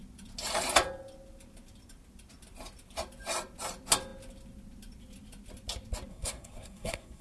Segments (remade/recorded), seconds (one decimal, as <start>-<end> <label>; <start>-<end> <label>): 0.0-6.1 recorded; 6.1-7.2 remade